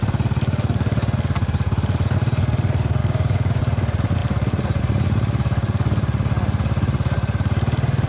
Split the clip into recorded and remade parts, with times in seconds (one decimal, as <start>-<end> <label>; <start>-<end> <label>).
0.0-3.0 recorded; 3.0-3.6 remade; 3.6-8.1 recorded